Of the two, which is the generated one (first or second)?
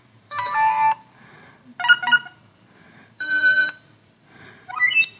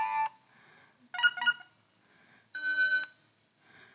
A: first